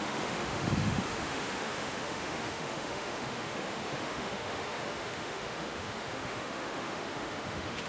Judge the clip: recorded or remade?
remade